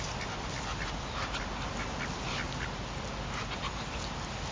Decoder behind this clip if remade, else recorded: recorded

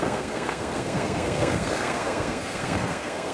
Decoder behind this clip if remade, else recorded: remade, codec, SNAC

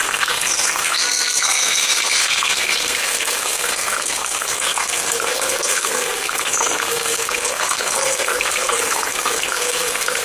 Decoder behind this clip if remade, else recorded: remade, codec, SNAC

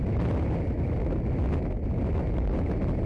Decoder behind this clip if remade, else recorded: recorded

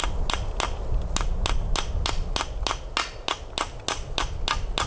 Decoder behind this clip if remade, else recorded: recorded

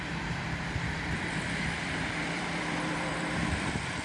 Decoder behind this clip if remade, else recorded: remade, vocoder, BigVGAN v2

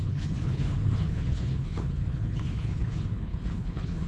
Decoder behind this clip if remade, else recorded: remade, codec, HILCodec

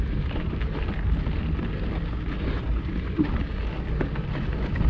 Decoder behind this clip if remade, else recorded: recorded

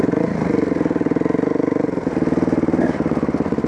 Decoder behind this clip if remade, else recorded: recorded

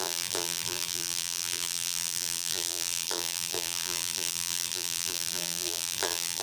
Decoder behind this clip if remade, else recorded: remade, vocoder, BigVGAN v2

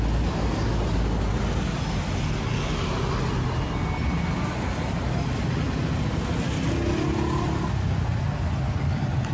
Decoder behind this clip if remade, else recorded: recorded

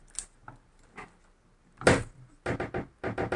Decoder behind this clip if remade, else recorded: recorded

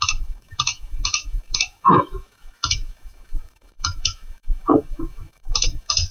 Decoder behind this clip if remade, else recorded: remade, autoencoder, DAC-VAE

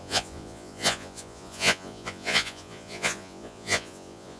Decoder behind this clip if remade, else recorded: remade, vocoder, Vocos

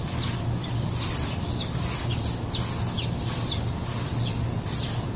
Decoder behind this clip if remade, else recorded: recorded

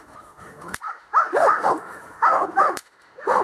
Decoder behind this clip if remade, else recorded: remade, autoencoder, DAC-VAE